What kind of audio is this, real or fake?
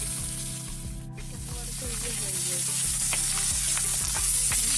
real